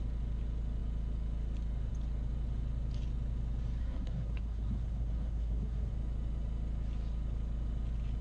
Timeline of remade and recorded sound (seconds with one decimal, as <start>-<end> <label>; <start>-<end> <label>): 0.0-3.8 recorded; 3.8-5.9 remade; 5.9-8.2 recorded